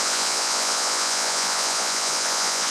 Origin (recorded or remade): remade